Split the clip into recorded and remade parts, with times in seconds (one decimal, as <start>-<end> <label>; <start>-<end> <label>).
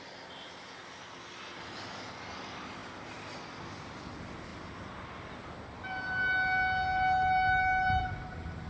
0.0-8.7 recorded